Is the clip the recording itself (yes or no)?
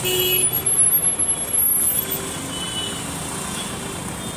yes